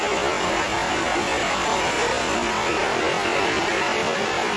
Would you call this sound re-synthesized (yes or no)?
no